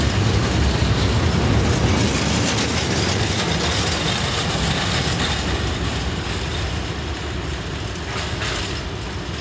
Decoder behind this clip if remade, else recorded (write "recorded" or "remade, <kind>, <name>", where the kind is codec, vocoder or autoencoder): recorded